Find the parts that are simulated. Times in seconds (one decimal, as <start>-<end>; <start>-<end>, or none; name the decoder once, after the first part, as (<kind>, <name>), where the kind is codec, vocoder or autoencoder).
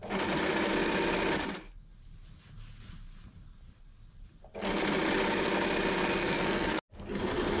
6.2-6.8 (codec, SNAC)